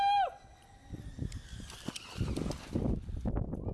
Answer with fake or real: real